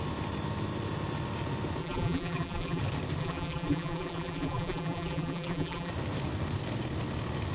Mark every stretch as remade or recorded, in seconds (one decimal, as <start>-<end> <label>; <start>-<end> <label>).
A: 0.0-1.8 recorded; 1.8-2.8 remade; 2.8-3.2 recorded; 3.2-5.9 remade; 5.9-7.5 recorded